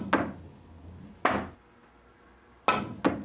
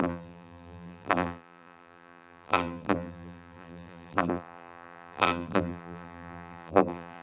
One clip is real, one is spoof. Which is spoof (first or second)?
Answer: second